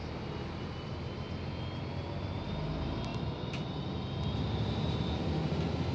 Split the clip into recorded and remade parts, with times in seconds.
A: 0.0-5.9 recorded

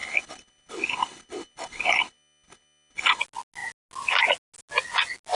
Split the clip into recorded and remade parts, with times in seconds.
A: 0.0-3.2 remade; 3.2-5.3 recorded

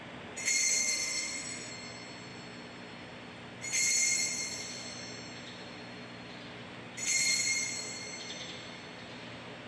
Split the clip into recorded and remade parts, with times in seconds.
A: 0.0-0.8 recorded; 0.8-1.7 remade; 1.7-9.7 recorded

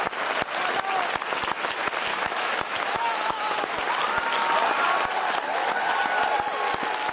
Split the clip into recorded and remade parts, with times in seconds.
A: 0.0-2.1 recorded; 2.1-3.8 remade; 3.8-7.1 recorded